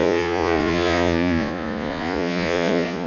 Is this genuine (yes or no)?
no